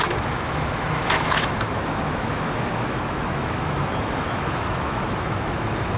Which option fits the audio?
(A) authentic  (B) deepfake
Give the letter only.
B